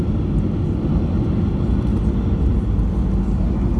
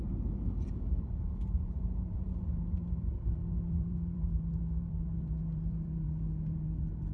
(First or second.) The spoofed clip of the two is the second